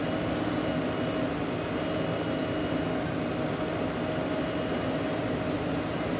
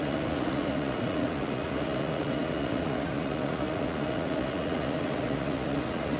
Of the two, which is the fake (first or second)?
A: second